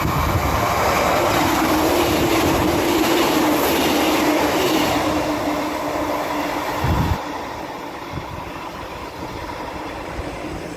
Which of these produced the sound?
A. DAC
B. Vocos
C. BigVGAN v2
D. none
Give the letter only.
D